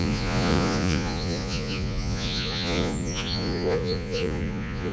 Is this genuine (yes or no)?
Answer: no